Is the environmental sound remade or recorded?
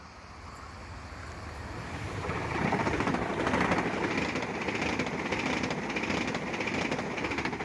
recorded